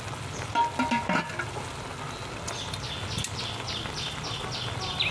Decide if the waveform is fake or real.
real